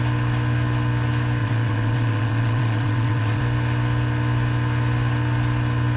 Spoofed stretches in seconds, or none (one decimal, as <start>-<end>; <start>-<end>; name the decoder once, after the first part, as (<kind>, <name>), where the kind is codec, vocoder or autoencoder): 1.4-3.4 (vocoder, WaveNeXt)